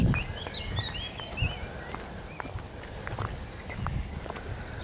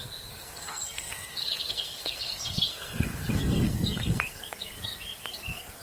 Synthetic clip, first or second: second